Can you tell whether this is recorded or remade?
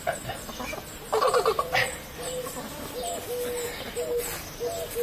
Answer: recorded